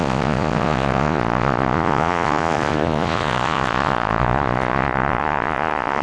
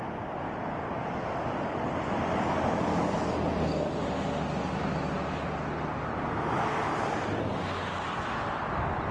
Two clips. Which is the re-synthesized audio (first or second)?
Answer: first